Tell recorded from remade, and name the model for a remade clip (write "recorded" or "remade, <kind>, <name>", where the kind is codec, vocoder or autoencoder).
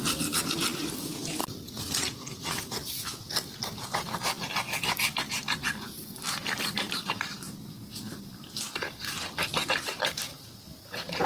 remade, vocoder, BigVGAN v2